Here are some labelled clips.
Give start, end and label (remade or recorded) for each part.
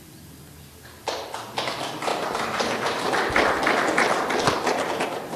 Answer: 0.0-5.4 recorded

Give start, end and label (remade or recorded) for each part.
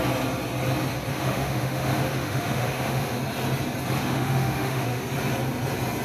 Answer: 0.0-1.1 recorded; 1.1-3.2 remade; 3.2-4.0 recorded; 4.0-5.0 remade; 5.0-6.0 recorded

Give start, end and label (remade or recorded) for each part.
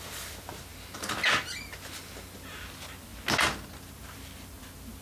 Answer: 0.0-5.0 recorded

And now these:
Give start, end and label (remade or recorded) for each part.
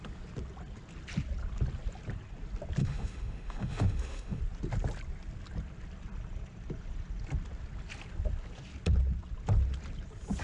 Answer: 0.0-2.8 recorded; 2.8-4.4 remade; 4.4-10.4 recorded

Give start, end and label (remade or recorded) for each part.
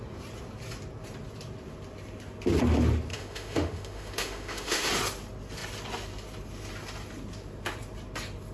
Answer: 0.0-3.1 recorded; 3.1-4.9 remade; 4.9-8.5 recorded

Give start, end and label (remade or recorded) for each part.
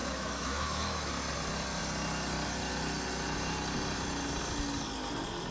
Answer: 0.0-1.1 remade; 1.1-5.5 recorded